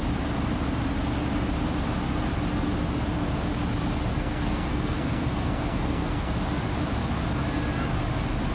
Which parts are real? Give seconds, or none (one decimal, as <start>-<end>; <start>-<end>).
0.0-4.1; 6.3-8.5